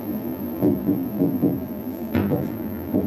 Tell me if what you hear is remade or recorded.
remade